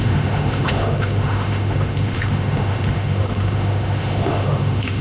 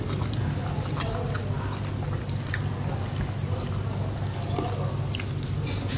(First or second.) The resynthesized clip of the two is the first